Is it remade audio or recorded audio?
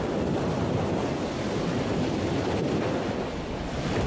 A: recorded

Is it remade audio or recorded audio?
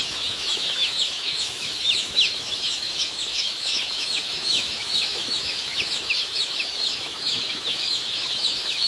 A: remade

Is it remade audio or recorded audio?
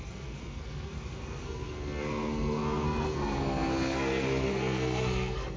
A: remade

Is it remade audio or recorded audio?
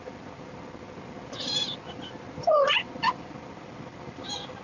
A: remade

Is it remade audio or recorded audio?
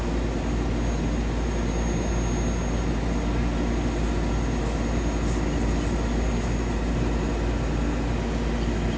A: recorded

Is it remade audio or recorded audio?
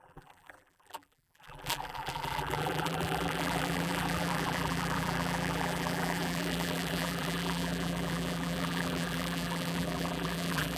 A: remade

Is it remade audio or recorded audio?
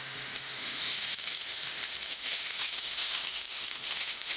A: remade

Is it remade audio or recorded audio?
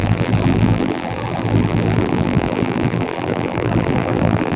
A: remade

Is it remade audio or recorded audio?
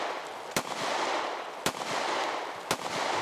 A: recorded